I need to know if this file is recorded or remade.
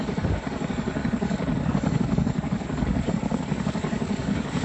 remade